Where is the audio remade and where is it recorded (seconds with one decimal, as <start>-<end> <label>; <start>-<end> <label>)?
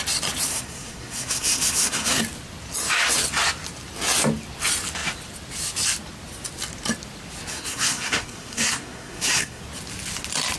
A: 0.0-0.5 recorded; 0.5-2.2 remade; 2.2-7.5 recorded; 7.5-9.6 remade; 9.6-10.6 recorded